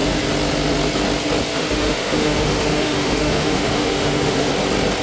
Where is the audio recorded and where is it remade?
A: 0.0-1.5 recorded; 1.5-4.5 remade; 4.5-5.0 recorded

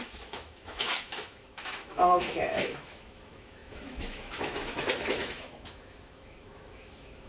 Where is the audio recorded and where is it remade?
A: 0.0-7.3 remade

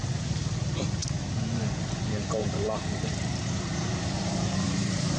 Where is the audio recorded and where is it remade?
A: 0.0-2.4 recorded; 2.4-5.2 remade